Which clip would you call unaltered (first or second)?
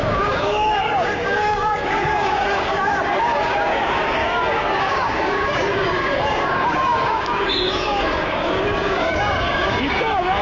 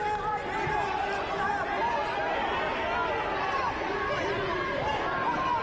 second